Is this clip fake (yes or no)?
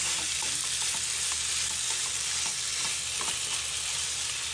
no